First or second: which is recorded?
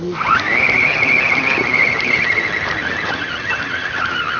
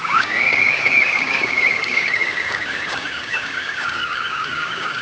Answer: first